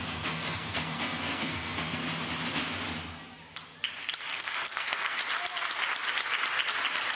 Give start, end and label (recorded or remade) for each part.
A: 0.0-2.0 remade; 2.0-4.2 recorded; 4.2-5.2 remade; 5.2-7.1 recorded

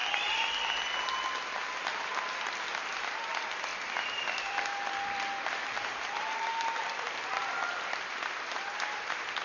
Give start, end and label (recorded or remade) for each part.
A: 0.0-0.5 remade; 0.5-3.7 recorded; 3.7-7.4 remade; 7.4-9.4 recorded

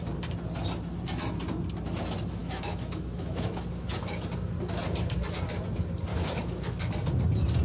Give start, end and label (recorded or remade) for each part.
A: 0.0-2.4 recorded; 2.4-4.3 remade; 4.3-6.1 recorded; 6.1-6.8 remade; 6.8-7.6 recorded

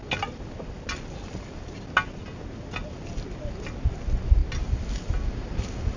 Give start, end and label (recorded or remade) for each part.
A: 0.0-6.0 recorded

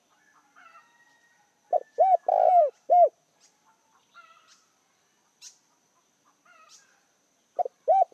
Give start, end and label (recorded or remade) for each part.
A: 0.0-2.6 recorded; 2.6-3.2 remade; 3.2-6.5 recorded; 6.5-8.1 remade

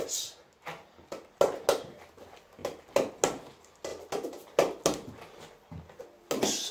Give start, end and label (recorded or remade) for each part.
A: 0.0-6.7 recorded

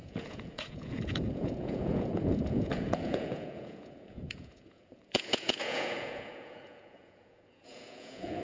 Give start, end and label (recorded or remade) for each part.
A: 0.0-8.4 remade